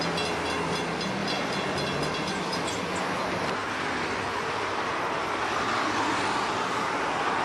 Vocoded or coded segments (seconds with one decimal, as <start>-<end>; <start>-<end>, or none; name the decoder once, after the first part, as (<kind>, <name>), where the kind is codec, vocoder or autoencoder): none